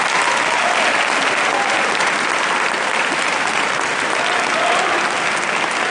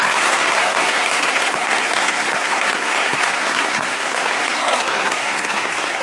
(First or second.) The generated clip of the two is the second